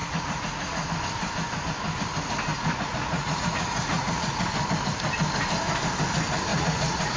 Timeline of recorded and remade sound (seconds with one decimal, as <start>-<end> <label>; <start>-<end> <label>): 0.0-0.9 remade; 0.9-2.5 recorded; 2.5-4.4 remade; 4.4-6.5 recorded; 6.5-7.2 remade